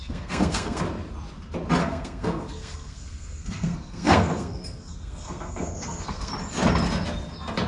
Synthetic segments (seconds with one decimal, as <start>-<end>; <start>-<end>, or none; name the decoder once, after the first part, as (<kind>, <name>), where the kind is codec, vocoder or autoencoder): 0.0-0.8 (codec, SNAC); 1.8-6.3